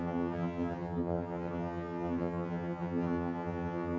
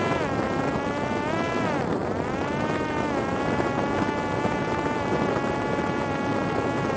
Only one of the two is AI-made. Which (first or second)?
first